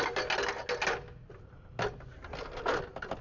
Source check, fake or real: real